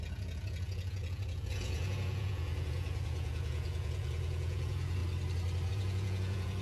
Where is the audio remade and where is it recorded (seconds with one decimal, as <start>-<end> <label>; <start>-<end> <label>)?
0.0-5.0 remade; 5.0-5.7 recorded; 5.7-6.6 remade